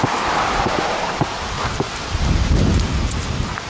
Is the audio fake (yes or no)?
yes